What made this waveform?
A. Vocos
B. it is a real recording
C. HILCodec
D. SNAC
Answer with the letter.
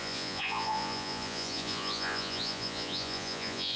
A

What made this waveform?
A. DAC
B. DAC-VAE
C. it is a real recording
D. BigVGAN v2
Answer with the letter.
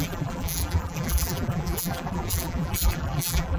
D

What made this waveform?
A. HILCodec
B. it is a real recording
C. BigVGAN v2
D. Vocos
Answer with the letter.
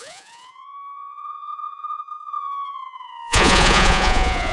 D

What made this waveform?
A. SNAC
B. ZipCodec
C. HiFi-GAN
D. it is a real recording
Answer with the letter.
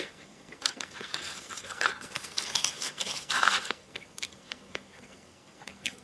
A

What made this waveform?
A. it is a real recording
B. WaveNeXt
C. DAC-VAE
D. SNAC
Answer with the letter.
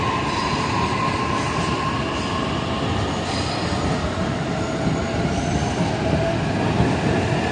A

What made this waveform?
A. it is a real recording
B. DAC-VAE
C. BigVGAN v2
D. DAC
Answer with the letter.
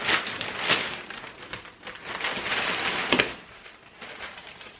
A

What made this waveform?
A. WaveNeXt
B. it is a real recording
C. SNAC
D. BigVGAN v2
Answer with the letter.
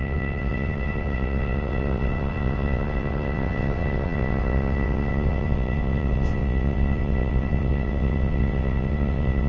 A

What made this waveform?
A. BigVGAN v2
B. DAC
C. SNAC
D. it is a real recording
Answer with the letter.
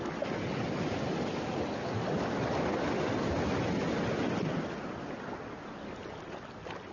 D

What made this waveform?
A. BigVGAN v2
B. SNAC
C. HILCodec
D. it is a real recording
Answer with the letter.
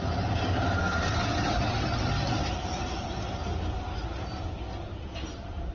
D